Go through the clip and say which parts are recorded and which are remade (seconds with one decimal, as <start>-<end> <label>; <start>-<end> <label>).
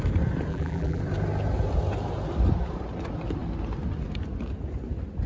0.0-0.5 recorded; 0.5-1.0 remade; 1.0-5.3 recorded